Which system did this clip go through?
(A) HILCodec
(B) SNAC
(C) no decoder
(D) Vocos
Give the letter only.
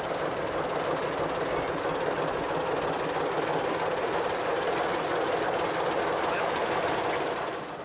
C